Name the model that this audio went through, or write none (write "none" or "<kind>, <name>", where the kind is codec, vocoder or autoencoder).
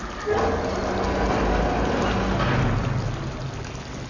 none